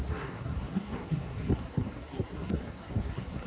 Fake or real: fake